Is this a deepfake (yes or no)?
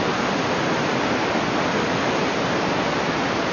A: no